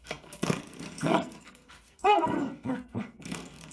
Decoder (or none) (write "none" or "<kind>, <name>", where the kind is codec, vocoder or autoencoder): codec, SNAC